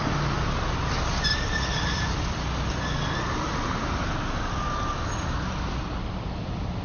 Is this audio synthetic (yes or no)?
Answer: no